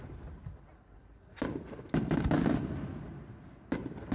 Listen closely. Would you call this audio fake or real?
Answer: real